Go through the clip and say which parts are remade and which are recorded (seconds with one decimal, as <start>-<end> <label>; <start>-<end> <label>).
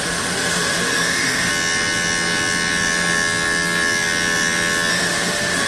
0.0-1.5 remade; 1.5-4.9 recorded; 4.9-5.7 remade